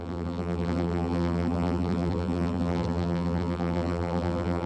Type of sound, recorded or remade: remade